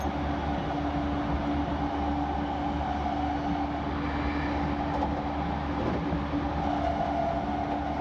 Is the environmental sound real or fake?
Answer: real